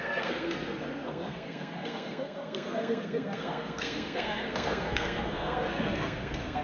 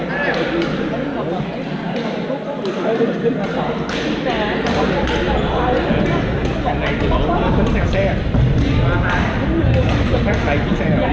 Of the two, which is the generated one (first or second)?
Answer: first